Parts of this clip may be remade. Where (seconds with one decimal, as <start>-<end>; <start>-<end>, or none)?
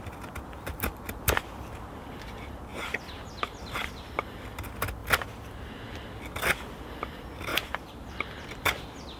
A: 2.7-4.0; 7.5-8.5